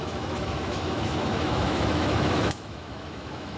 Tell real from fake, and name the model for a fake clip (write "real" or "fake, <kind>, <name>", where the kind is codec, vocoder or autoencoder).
fake, autoencoder, DAC-VAE